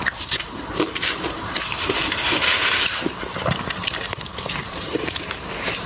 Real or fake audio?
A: fake